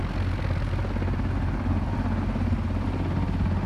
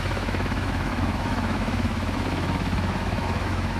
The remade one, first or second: second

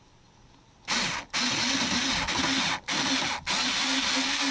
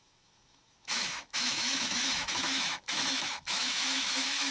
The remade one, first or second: second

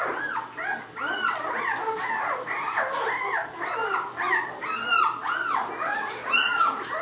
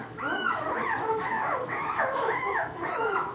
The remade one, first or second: second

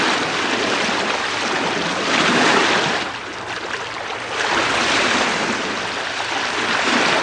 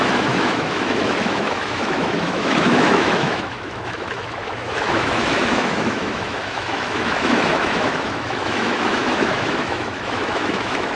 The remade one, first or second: second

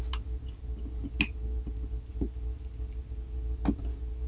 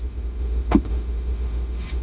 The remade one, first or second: second